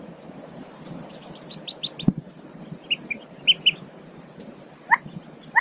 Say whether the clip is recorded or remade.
recorded